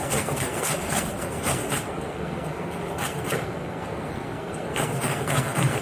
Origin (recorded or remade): remade